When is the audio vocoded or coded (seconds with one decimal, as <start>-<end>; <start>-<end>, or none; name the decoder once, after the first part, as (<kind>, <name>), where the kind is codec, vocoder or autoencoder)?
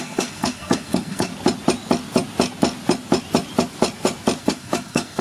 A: 0.0-1.3 (codec, SNAC); 4.4-5.2